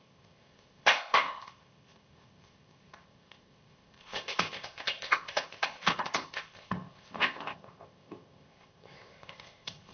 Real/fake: fake